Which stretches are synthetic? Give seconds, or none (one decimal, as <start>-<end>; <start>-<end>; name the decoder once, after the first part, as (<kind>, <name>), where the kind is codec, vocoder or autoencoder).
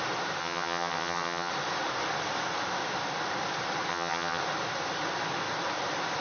0.4-1.5 (vocoder, HiFi-GAN); 3.9-4.4